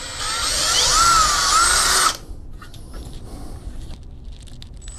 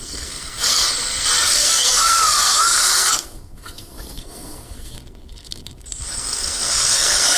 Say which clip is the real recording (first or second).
first